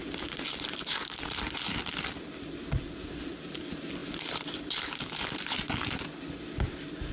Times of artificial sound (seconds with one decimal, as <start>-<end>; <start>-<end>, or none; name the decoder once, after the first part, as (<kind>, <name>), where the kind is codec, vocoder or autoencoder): none